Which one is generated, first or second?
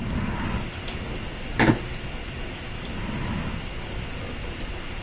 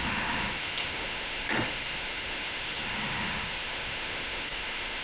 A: second